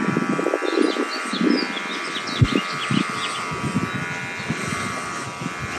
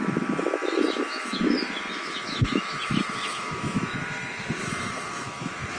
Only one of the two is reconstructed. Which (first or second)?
second